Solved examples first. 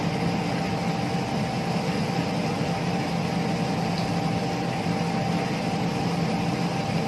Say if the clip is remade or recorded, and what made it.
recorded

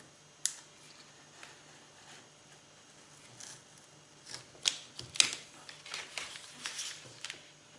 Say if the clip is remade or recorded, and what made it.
recorded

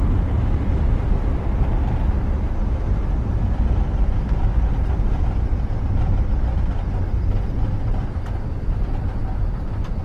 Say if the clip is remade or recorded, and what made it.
recorded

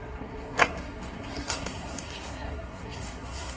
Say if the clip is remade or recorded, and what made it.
remade, codec, SNAC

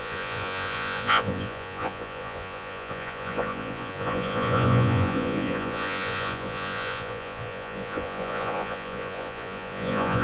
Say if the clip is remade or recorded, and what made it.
remade, vocoder, Vocos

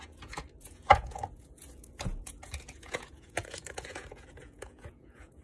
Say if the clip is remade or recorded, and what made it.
remade, vocoder, Vocos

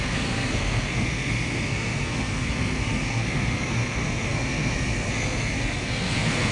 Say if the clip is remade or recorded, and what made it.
remade, codec, SNAC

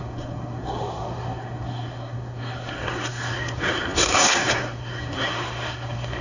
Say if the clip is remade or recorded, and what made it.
remade, codec, SNAC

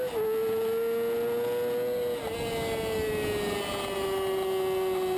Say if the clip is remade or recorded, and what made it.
recorded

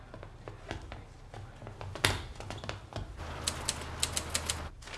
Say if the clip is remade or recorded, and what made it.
recorded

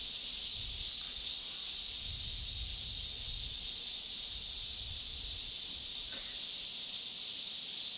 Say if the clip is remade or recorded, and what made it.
recorded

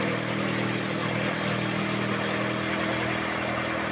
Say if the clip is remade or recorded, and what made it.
recorded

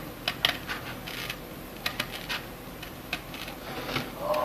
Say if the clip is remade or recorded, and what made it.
recorded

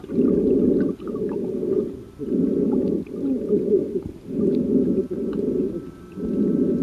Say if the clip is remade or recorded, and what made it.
recorded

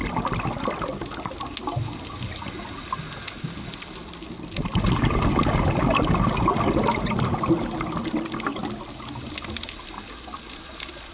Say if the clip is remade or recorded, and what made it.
recorded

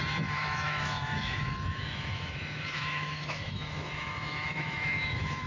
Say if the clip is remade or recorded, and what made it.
remade, autoencoder, DAC-VAE